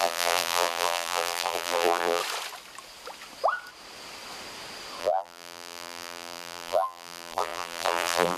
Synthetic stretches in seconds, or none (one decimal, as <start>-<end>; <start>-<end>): 0.0-2.2; 5.0-8.4